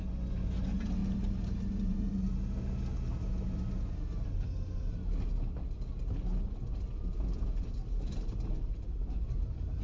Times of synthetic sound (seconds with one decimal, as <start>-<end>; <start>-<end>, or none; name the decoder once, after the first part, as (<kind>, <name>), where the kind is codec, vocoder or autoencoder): 1.0-2.3 (vocoder, BigVGAN v2); 7.8-9.8